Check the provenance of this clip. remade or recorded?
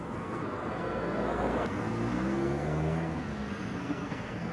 remade